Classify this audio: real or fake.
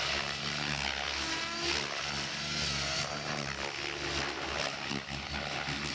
real